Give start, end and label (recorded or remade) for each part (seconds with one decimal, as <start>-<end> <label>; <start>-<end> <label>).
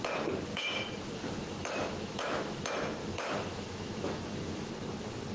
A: 0.0-0.5 recorded; 0.5-2.6 remade; 2.6-3.0 recorded; 3.0-4.7 remade; 4.7-5.3 recorded